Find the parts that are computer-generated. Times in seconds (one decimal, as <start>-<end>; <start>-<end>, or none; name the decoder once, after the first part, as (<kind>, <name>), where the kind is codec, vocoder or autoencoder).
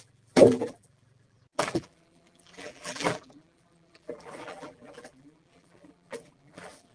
0.0-6.9 (vocoder, BigVGAN v2)